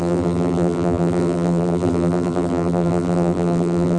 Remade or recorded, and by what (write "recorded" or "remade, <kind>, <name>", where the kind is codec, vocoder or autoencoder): remade, vocoder, BigVGAN v2